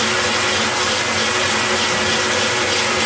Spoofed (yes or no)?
no